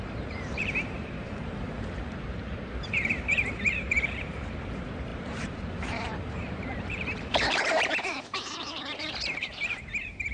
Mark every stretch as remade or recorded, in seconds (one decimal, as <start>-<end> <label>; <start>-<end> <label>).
0.0-10.3 remade